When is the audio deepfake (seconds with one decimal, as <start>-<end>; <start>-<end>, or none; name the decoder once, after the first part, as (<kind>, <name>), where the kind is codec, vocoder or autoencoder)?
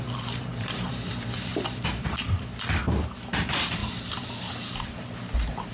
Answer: 0.0-2.8 (vocoder, BigVGAN v2); 3.4-5.7